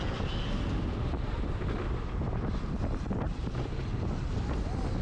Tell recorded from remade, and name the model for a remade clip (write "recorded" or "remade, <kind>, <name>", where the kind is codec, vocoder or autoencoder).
recorded